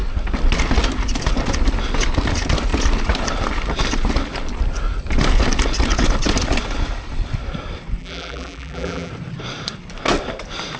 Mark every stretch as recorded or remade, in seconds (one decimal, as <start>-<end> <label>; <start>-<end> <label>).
0.0-8.0 recorded; 8.0-9.1 remade; 9.1-10.8 recorded